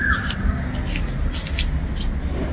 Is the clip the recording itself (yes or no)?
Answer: yes